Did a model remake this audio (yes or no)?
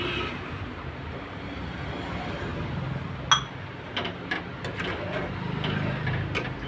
no